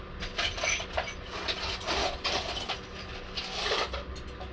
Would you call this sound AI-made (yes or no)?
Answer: no